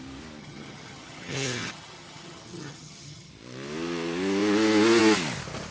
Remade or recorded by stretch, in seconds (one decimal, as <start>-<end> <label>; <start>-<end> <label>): 0.0-0.4 recorded; 0.4-3.3 remade; 3.3-5.7 recorded